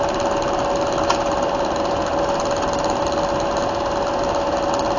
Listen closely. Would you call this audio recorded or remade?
recorded